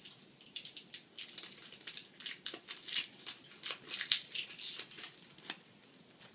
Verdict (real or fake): real